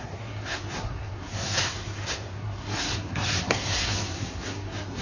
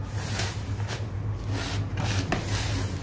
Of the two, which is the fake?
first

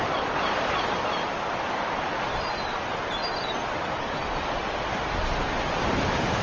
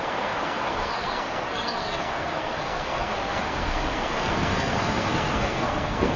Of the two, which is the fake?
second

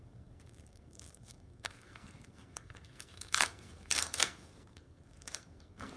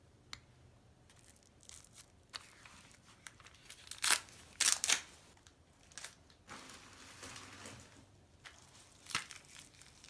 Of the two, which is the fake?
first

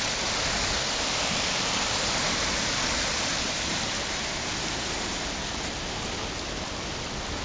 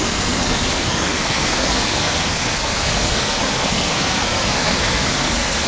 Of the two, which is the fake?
second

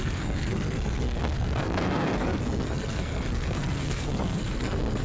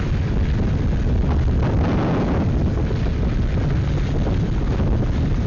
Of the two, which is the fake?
first